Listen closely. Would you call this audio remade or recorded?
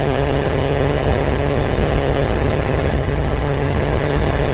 remade